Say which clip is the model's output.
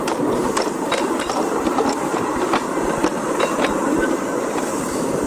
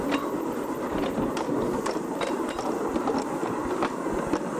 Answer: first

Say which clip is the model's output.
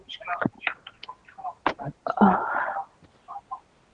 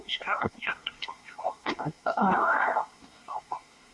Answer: second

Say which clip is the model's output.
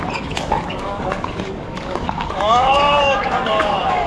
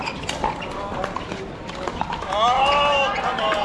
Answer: first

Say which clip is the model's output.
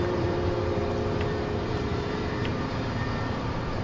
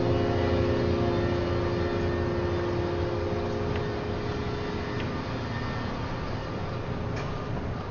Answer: first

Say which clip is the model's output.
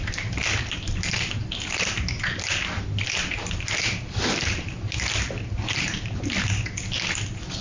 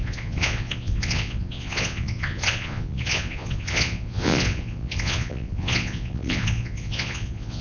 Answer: second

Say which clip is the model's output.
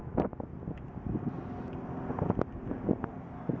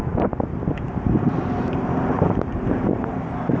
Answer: second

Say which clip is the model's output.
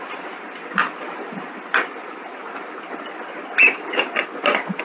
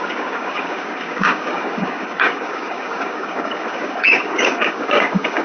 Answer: second